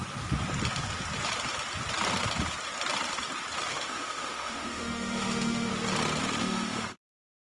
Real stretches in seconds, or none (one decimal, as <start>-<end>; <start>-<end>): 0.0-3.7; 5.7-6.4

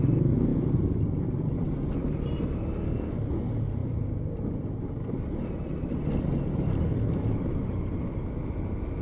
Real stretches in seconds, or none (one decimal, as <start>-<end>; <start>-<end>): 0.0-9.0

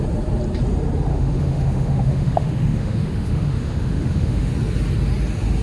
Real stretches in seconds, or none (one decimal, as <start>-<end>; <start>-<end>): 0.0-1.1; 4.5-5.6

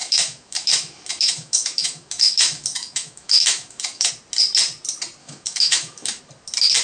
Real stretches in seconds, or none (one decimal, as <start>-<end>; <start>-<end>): 4.1-5.2; 6.2-6.8

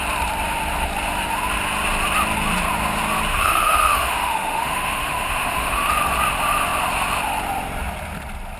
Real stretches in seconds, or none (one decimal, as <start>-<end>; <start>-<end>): 0.0-3.3; 5.9-8.6

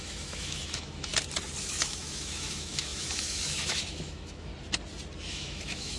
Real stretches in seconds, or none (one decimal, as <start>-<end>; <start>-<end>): 1.1-1.6; 4.5-5.3